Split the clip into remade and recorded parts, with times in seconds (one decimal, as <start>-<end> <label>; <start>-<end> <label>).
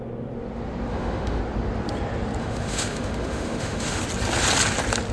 0.0-0.9 recorded; 0.9-1.4 remade; 1.4-2.4 recorded; 2.4-4.0 remade; 4.0-5.1 recorded